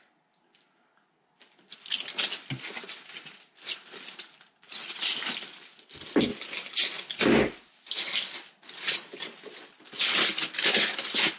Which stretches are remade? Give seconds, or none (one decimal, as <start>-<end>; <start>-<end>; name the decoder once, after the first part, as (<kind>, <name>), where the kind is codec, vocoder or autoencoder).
none